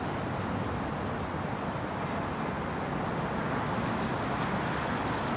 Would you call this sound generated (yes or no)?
no